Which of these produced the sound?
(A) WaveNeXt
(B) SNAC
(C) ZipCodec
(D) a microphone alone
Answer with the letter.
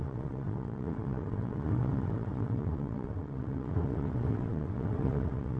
A